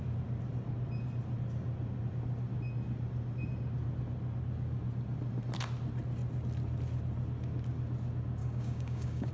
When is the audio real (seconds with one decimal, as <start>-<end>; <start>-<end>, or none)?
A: 0.0-8.4